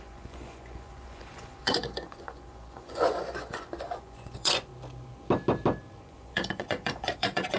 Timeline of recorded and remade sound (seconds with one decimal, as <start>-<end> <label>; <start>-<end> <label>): 0.0-4.7 remade; 4.7-6.0 recorded; 6.0-7.6 remade